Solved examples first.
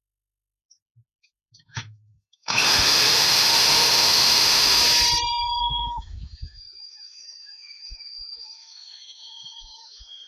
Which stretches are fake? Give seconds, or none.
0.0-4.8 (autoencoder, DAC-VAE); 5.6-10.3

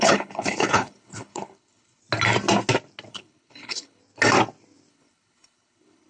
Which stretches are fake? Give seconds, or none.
0.0-2.0 (codec, HILCodec); 3.1-4.0; 4.9-6.1